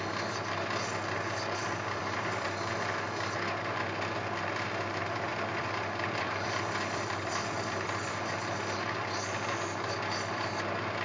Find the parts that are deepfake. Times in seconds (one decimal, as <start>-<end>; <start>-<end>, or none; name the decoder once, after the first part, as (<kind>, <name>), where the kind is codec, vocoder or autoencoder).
1.6-2.7 (vocoder, BigVGAN v2); 5.3-8.3